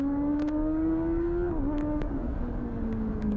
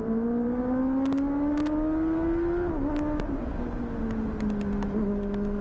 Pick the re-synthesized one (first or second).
first